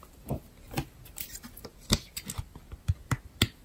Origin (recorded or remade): recorded